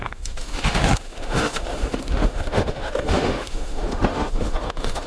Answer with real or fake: fake